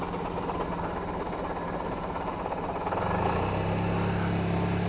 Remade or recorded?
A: recorded